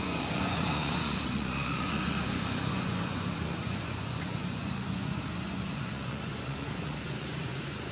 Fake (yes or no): yes